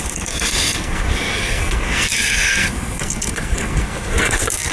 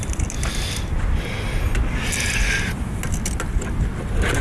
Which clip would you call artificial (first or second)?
first